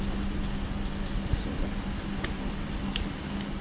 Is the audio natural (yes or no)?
yes